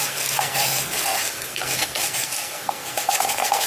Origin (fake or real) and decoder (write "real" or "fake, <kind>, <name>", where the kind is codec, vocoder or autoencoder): fake, codec, SNAC